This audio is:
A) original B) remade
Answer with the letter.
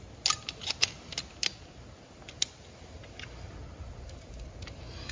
A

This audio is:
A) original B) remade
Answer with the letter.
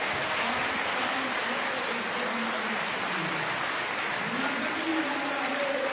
A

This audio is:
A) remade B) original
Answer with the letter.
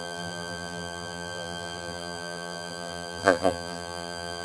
A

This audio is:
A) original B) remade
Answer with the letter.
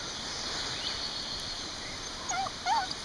A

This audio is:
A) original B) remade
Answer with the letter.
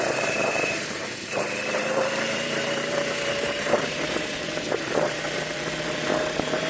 B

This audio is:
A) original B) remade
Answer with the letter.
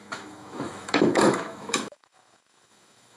B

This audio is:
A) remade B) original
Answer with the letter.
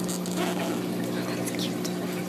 B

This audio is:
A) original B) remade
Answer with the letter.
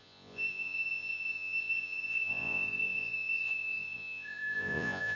B